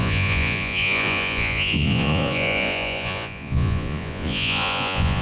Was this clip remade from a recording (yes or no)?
yes